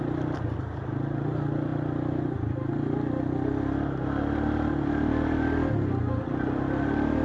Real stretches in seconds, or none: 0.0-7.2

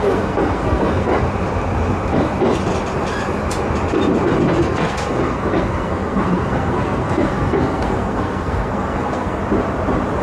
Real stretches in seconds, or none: 1.1-4.6; 9.4-10.2

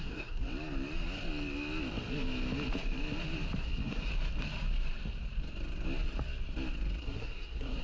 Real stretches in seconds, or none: 0.4-3.6; 4.1-7.0

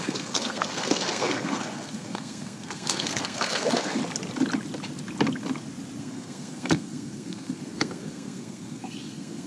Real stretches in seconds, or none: 4.0-6.0

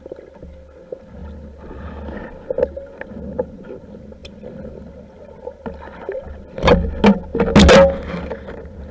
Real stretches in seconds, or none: 0.0-8.9

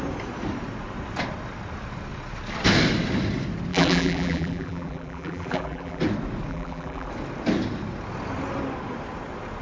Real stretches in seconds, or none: 0.0-3.7; 6.0-6.5; 7.1-9.6

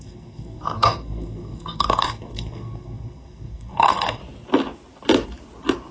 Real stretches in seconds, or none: 4.2-5.9

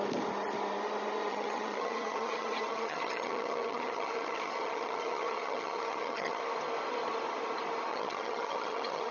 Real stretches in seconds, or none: 0.0-1.3; 6.4-7.9